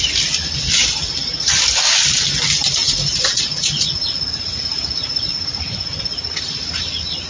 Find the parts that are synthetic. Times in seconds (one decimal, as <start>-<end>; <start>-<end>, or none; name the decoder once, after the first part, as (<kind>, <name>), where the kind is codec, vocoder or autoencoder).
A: 2.8-6.4 (vocoder, Vocos)

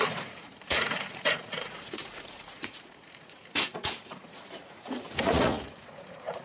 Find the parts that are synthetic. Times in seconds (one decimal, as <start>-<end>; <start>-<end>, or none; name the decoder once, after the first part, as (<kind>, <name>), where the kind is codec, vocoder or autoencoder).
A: 0.0-6.4 (vocoder, Vocos)